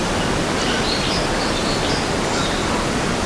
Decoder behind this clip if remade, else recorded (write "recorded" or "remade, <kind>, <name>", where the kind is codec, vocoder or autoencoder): recorded